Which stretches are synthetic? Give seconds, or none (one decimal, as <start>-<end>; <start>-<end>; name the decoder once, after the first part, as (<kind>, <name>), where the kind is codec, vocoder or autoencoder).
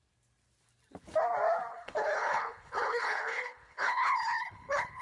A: 1.7-5.0 (codec, HILCodec)